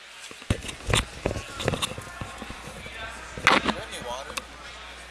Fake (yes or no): no